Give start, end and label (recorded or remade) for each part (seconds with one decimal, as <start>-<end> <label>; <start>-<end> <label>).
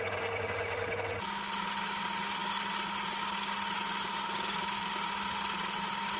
0.0-6.2 recorded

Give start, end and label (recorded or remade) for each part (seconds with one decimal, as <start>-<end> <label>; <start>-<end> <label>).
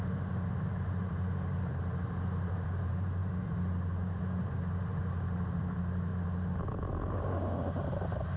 0.0-6.1 remade; 6.1-6.6 recorded; 6.6-8.4 remade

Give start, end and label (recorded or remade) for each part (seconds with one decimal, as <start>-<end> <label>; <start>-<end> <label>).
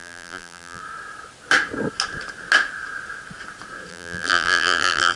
0.0-0.8 remade; 0.8-3.9 recorded; 3.9-5.2 remade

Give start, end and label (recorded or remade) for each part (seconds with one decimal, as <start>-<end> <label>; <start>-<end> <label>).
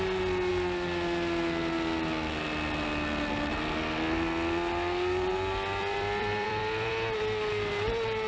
0.0-5.8 recorded; 5.8-6.9 remade; 6.9-8.3 recorded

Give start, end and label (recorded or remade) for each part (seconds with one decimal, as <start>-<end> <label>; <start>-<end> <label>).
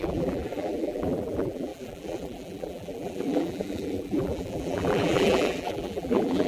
0.0-6.5 remade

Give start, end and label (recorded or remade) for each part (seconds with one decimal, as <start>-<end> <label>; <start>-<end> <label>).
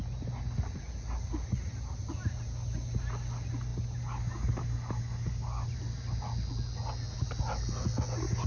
0.0-8.5 recorded